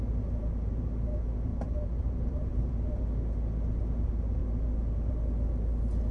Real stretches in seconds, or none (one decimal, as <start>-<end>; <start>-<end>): 0.0-1.5; 2.7-6.1